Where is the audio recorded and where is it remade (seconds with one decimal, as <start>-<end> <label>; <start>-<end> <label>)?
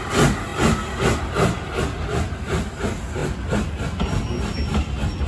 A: 0.0-5.3 recorded